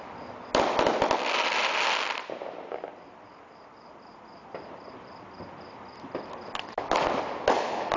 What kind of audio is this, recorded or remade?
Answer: recorded